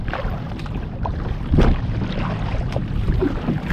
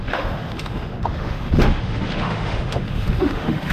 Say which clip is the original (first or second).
first